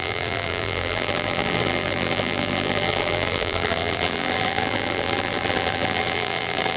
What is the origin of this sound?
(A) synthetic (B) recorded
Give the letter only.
A